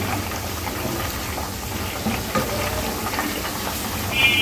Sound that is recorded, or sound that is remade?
recorded